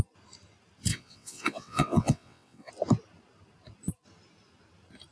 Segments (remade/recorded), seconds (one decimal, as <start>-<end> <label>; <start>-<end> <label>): 0.0-0.9 recorded; 0.9-2.7 remade; 2.7-5.1 recorded